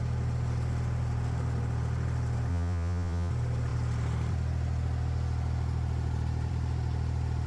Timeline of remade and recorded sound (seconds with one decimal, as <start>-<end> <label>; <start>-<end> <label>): 0.0-2.5 recorded; 2.5-3.3 remade; 3.3-7.5 recorded